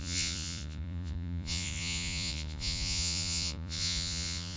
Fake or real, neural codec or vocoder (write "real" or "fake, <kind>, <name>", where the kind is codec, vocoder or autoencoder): fake, vocoder, Vocos